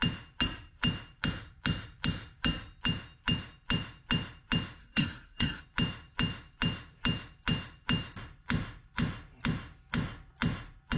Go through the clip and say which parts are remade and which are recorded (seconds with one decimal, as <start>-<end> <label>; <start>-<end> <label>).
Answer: 0.0-4.8 recorded; 4.8-5.6 remade; 5.6-11.0 recorded